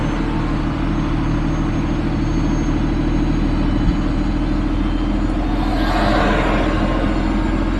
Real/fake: real